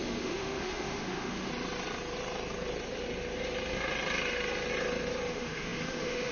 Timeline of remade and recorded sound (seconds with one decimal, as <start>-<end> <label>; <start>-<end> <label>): 0.0-1.5 remade; 1.5-5.3 recorded; 5.3-6.3 remade